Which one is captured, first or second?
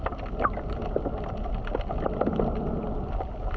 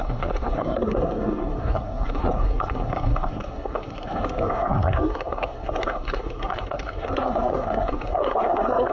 first